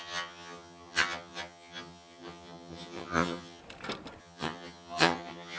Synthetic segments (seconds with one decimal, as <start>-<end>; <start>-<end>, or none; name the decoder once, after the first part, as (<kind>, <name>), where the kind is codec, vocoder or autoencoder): 0.0-3.6 (vocoder, HiFi-GAN); 4.2-5.6